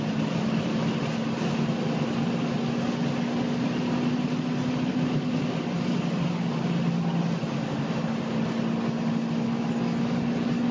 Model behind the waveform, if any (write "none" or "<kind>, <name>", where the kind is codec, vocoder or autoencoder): none